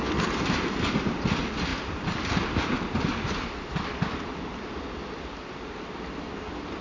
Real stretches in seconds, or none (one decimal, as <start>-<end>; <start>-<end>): 0.0-1.7; 2.8-6.8